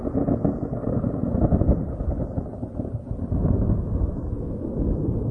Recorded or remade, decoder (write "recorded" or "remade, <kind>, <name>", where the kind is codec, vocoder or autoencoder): recorded